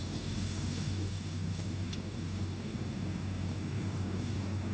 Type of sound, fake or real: fake